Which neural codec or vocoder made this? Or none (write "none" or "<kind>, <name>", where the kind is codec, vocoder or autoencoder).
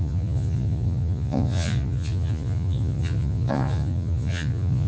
vocoder, Vocos